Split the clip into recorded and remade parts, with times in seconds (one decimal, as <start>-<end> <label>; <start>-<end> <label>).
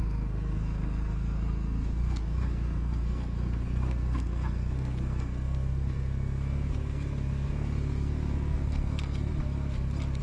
0.0-9.3 remade; 9.3-10.2 recorded